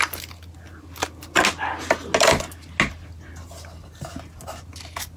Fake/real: real